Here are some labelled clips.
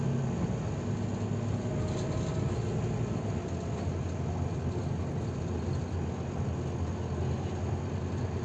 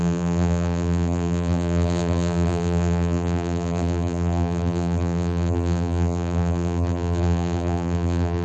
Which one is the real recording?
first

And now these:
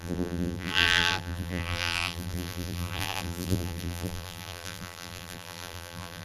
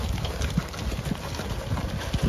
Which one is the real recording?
second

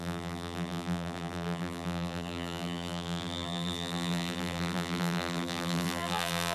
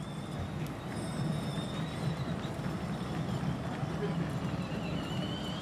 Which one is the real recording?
second